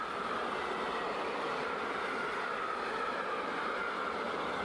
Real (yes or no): yes